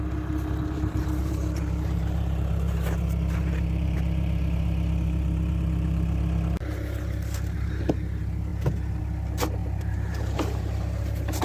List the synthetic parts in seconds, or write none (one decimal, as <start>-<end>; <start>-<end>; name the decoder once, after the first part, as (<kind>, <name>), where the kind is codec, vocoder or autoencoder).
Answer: 1.2-6.2 (vocoder, BigVGAN v2); 9.6-11.4